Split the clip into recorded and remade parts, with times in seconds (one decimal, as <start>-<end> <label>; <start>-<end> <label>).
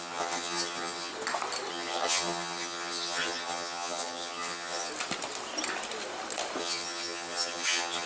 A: 0.0-1.1 remade; 1.1-1.7 recorded; 1.7-4.9 remade; 4.9-6.6 recorded; 6.6-8.1 remade